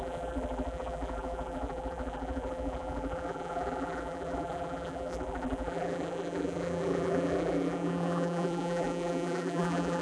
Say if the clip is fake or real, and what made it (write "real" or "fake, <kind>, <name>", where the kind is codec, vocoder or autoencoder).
fake, vocoder, BigVGAN v2